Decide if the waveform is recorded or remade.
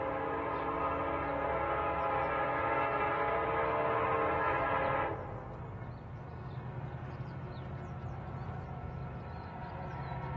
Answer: recorded